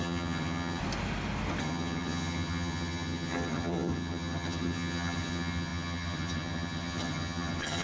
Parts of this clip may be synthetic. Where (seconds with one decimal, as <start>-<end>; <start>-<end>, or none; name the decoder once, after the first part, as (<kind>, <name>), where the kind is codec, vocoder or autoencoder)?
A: 0.0-0.8 (vocoder, HiFi-GAN); 1.6-7.8